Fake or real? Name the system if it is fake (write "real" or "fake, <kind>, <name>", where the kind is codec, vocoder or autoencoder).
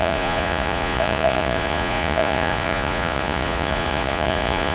fake, vocoder, Vocos